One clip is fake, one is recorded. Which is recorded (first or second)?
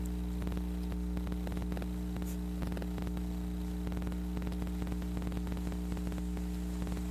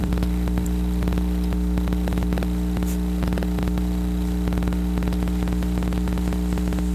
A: first